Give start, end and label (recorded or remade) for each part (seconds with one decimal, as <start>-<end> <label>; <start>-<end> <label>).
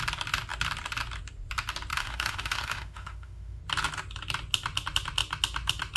0.0-1.9 recorded; 1.9-3.6 remade; 3.6-6.0 recorded